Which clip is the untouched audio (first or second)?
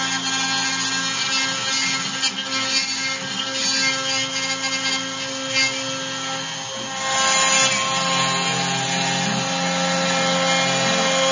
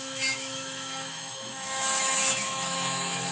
first